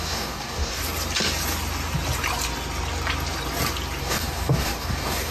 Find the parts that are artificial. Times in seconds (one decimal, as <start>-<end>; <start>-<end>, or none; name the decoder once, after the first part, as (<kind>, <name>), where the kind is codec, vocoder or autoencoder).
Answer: 0.0-0.8 (codec, DAC); 4.0-5.3